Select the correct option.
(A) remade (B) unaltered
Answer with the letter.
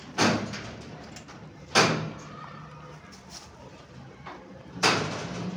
B